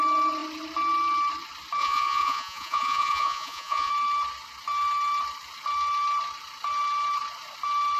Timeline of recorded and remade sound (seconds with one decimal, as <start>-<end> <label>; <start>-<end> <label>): 0.0-1.8 recorded; 1.8-3.9 remade; 3.9-8.0 recorded